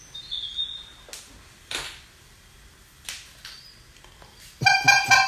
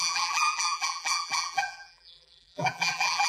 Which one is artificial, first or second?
second